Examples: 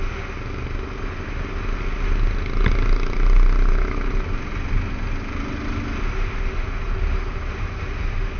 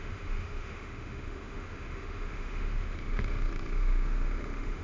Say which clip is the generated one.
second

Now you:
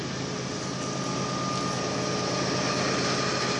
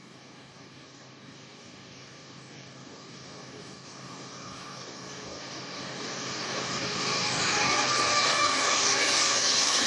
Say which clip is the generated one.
second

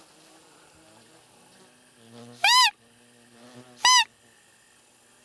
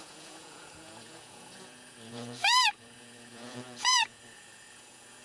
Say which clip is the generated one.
second